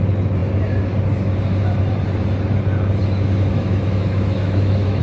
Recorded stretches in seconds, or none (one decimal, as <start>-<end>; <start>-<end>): 0.0-3.0